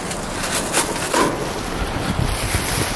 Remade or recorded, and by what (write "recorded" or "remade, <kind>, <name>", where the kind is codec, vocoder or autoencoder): recorded